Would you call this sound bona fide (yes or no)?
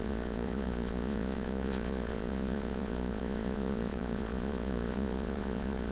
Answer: no